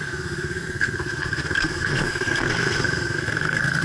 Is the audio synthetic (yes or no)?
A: yes